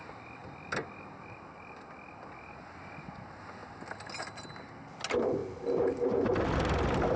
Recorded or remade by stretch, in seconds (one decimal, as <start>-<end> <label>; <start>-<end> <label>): 0.0-7.2 recorded